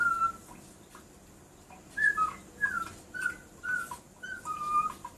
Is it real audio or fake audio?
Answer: fake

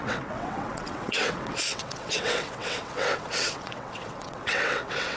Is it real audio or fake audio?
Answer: fake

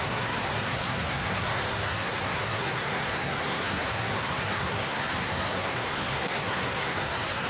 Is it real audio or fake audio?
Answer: fake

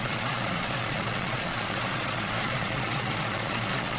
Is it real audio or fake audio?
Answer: fake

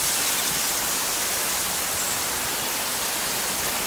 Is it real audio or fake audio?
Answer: real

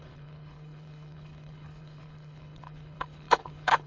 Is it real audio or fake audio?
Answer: fake